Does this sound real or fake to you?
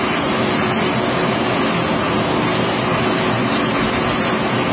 real